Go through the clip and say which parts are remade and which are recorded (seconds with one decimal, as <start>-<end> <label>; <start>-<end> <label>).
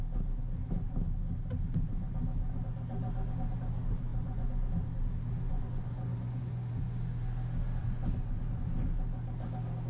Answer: 0.0-4.1 recorded; 4.1-4.7 remade; 4.7-5.5 recorded; 5.5-7.0 remade; 7.0-7.8 recorded; 7.8-8.4 remade; 8.4-9.9 recorded